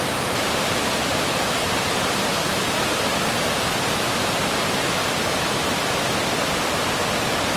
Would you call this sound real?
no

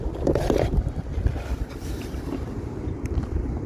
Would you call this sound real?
no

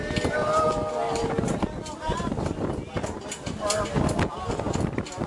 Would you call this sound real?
yes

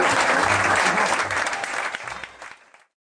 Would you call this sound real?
no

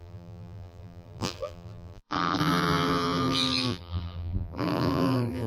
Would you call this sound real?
no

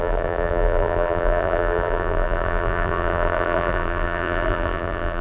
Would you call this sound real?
no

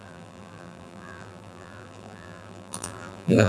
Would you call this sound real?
no